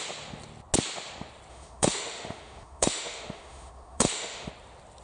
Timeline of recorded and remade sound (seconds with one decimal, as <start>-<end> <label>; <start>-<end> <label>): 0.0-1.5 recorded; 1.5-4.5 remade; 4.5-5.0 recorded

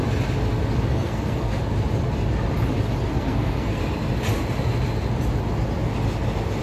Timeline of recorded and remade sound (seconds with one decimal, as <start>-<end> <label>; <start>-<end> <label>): 0.0-0.9 recorded; 0.9-1.6 remade; 1.6-3.1 recorded; 3.1-3.8 remade; 3.8-6.6 recorded

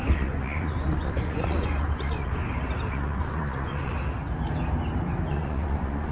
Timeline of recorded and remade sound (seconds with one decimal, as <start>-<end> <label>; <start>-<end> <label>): 0.0-2.4 remade; 2.4-2.9 recorded; 2.9-3.9 remade; 3.9-5.3 recorded; 5.3-6.1 remade

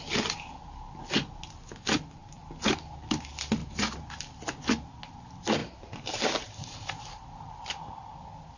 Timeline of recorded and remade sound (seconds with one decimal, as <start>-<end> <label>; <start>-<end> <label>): 0.0-3.6 recorded; 3.6-4.2 remade; 4.2-5.6 recorded; 5.6-7.0 remade; 7.0-8.6 recorded

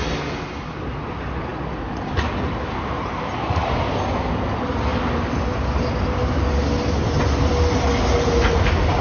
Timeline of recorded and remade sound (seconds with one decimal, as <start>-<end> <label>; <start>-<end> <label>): 0.0-9.0 recorded